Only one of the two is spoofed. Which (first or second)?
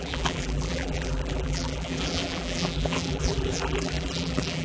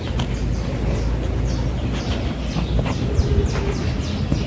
first